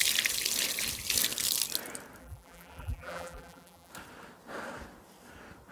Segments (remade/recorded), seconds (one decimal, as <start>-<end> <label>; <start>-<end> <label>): 0.0-2.2 recorded; 2.2-3.9 remade; 3.9-5.7 recorded